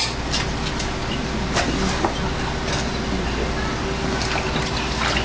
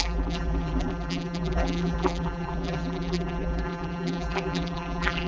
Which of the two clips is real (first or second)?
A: first